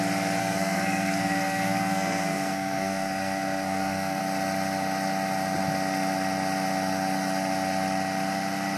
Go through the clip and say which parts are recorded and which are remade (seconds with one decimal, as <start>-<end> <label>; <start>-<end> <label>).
0.0-0.4 recorded; 0.4-4.2 remade; 4.2-8.8 recorded